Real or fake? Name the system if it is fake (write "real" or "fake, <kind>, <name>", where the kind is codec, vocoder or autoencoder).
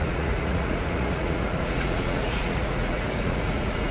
fake, vocoder, Vocos